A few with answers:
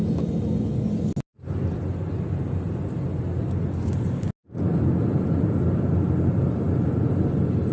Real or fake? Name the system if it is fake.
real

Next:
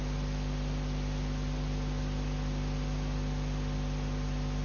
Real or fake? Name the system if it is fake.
real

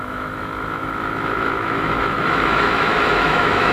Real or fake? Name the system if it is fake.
fake, autoencoder, DAC-VAE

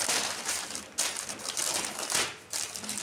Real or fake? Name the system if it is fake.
real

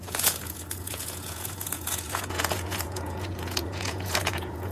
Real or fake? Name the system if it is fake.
fake, vocoder, Vocos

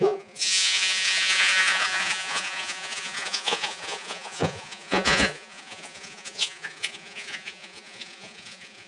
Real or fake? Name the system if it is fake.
fake, vocoder, Vocos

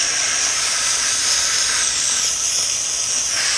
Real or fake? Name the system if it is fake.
real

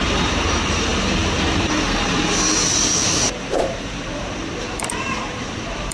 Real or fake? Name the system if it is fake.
fake, vocoder, BigVGAN v2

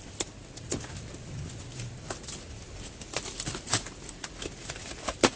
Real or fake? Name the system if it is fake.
real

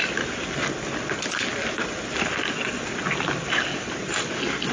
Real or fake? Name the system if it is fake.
real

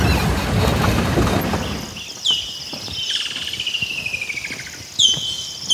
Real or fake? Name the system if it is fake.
real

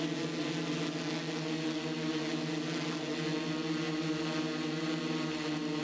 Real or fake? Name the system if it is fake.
real